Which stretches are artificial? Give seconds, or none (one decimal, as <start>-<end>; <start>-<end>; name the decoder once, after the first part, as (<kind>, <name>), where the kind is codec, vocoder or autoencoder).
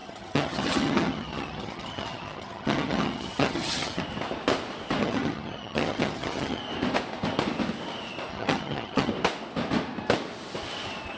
0.0-4.0 (vocoder, HiFi-GAN); 5.0-6.6; 8.3-9.1